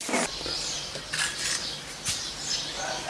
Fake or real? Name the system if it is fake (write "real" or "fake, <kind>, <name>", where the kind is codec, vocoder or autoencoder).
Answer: real